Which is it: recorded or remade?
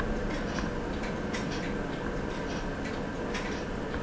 recorded